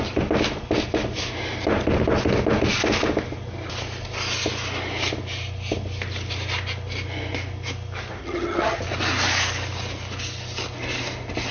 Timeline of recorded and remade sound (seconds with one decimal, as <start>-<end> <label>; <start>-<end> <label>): 0.0-8.2 recorded; 8.2-8.8 remade; 8.8-11.5 recorded